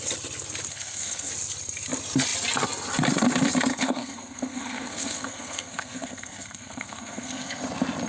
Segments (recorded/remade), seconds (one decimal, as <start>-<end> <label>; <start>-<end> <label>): 0.0-0.7 recorded; 0.7-1.3 remade; 1.3-3.7 recorded; 3.7-7.6 remade; 7.6-8.1 recorded